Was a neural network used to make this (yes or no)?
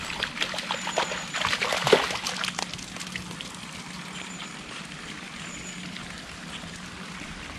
no